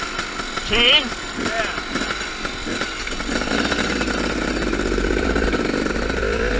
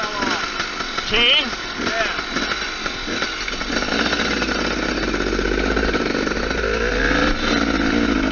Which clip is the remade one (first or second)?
first